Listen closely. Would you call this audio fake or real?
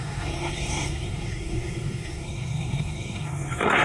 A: fake